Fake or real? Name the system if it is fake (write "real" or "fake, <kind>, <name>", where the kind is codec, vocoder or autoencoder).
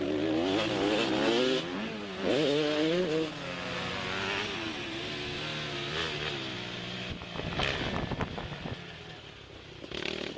real